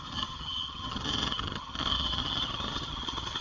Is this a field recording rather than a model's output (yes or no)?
no